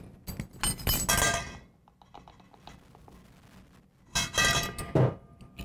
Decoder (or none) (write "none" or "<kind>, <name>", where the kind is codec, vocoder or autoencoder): none